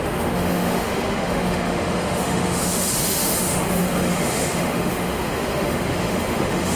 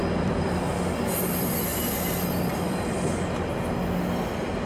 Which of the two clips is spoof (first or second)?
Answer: first